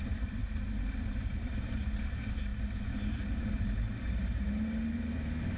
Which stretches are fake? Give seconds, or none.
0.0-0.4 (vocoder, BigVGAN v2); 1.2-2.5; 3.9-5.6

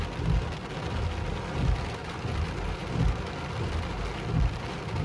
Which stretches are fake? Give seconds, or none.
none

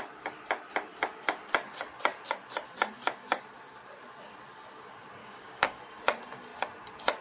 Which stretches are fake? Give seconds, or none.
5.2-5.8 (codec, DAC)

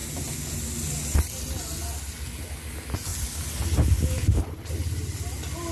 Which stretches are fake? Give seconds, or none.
none